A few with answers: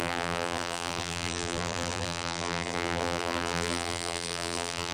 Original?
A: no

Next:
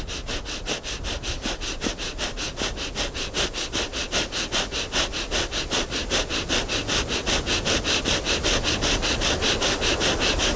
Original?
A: yes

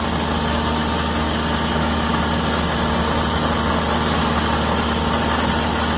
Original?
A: yes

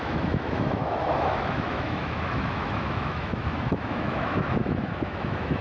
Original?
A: no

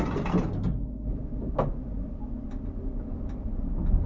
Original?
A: yes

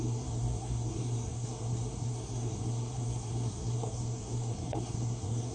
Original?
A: no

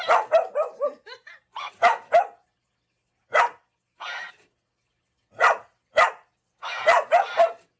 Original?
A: yes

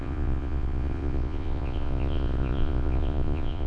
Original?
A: no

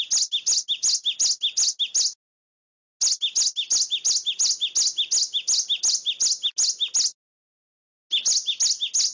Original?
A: yes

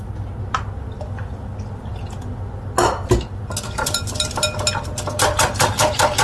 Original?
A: yes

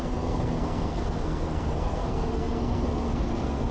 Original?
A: no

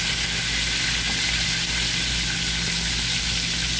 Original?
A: yes